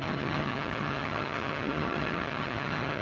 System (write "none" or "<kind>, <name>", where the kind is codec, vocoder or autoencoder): vocoder, HiFi-GAN